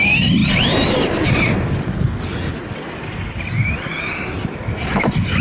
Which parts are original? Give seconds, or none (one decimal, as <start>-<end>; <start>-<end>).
0.0-5.4